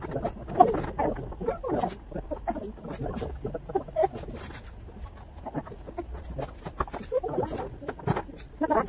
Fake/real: real